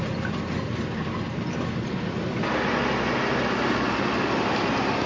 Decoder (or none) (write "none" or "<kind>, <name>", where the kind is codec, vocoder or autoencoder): none